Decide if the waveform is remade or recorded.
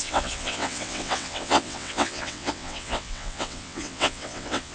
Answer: remade